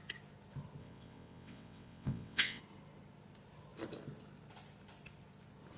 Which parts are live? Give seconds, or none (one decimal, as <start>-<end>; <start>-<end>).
0.0-0.8; 2.6-5.8